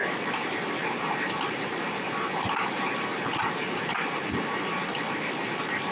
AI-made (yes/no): no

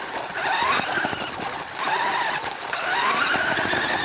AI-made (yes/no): no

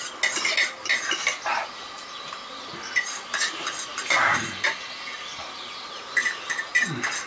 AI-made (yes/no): no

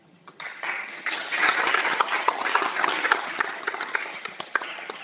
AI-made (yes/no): yes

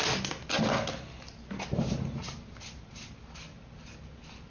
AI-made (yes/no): no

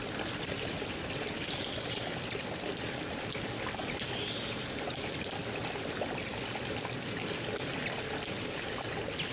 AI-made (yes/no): no